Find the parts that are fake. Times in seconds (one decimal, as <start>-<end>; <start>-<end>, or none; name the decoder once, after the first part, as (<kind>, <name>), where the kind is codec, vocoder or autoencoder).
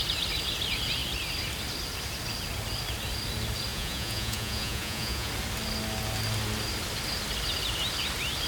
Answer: 3.7-5.3 (vocoder, Vocos)